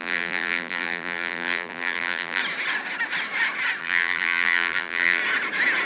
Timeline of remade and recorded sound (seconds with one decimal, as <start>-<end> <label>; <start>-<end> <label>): 0.0-2.4 remade; 2.4-3.8 recorded; 3.8-5.2 remade; 5.2-5.9 recorded